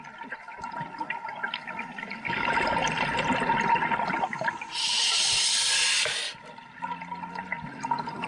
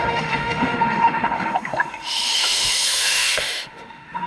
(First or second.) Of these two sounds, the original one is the first